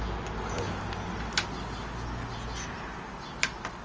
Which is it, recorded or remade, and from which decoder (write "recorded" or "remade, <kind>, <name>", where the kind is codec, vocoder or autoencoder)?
recorded